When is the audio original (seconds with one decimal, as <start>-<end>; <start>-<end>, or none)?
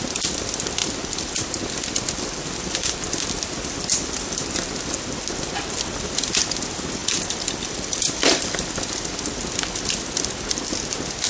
0.0-0.8; 1.3-7.0; 8.0-11.3